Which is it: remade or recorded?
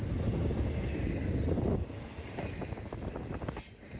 recorded